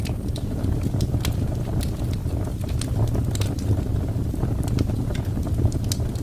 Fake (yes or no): no